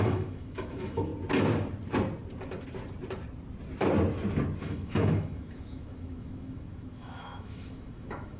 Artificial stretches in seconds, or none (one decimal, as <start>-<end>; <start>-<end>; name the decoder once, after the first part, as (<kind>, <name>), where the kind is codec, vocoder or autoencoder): 0.0-1.1 (autoencoder, DAC-VAE); 4.6-8.4